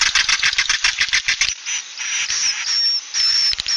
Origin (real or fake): real